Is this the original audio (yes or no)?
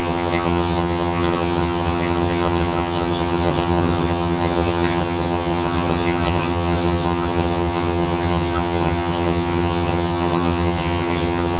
no